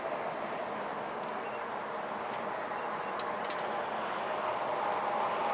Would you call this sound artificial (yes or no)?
no